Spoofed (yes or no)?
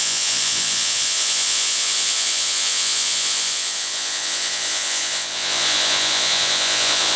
yes